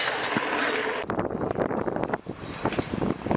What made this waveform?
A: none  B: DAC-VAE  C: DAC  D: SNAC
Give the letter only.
A